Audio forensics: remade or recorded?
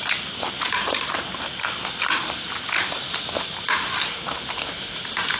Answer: recorded